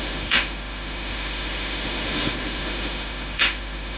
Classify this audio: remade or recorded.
remade